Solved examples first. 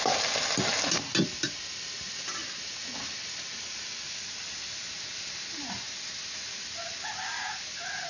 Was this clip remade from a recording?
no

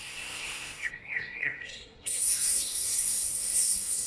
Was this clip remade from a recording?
yes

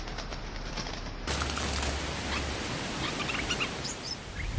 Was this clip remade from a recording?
yes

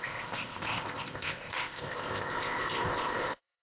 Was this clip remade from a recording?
yes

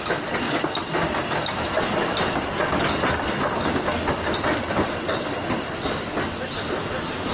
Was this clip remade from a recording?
no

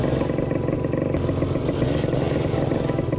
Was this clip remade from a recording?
no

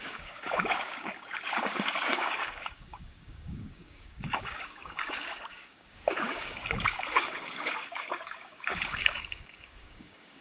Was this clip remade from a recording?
yes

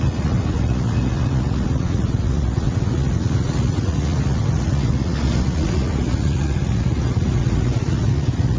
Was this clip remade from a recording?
yes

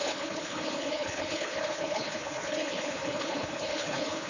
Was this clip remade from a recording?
yes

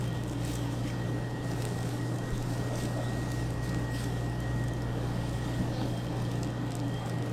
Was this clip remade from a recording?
yes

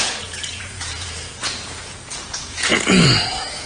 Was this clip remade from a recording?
yes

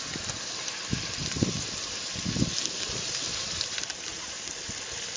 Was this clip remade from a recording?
no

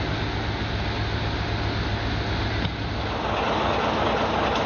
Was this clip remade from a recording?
no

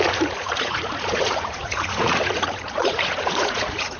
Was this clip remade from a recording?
yes